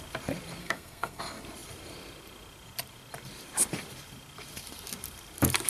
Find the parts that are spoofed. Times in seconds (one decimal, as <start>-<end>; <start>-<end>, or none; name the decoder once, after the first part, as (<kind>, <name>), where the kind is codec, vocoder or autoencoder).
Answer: 0.6-1.2 (codec, SNAC)